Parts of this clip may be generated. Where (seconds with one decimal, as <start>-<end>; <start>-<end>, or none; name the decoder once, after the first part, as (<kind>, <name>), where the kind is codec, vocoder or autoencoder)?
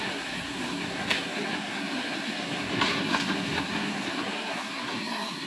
0.0-5.5 (codec, SNAC)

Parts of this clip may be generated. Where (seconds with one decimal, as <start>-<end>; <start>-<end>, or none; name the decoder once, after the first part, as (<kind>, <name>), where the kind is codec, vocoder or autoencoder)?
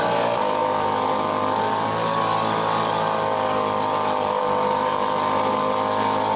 0.0-6.4 (codec, DAC)